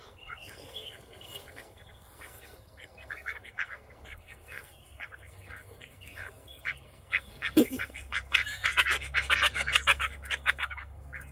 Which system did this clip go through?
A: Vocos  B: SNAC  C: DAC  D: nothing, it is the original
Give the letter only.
B